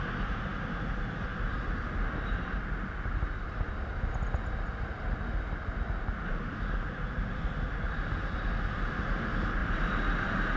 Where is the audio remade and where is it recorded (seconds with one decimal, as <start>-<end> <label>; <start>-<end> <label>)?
0.0-10.6 recorded